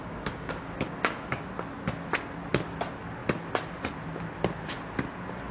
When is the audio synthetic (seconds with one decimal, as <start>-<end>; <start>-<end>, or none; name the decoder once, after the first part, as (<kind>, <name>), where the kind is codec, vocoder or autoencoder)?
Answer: 0.0-1.5 (codec, DAC)